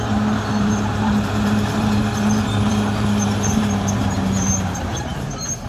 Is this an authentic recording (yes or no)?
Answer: no